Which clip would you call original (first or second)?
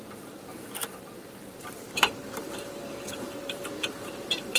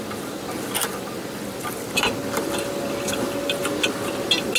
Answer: second